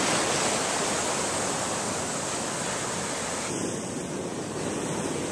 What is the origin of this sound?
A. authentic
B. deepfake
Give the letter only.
A